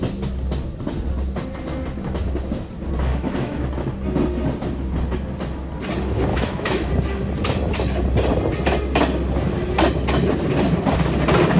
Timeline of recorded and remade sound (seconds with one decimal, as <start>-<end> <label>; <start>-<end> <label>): 0.0-3.1 recorded; 3.1-3.6 remade; 3.6-6.3 recorded; 6.3-6.9 remade; 6.9-11.6 recorded